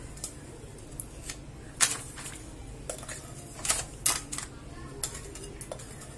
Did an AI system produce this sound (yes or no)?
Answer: no